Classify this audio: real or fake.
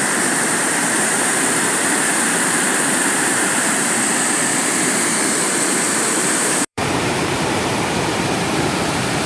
fake